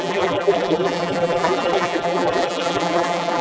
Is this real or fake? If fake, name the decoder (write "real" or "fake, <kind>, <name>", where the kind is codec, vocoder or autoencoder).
fake, vocoder, BigVGAN v2